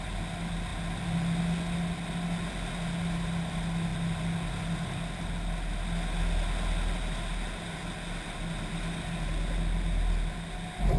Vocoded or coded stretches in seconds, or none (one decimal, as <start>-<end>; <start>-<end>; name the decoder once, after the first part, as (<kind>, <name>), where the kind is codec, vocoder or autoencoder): none